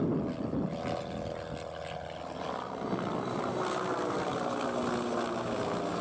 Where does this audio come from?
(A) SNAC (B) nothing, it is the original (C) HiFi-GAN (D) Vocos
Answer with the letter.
B